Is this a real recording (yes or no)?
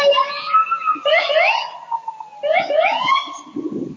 yes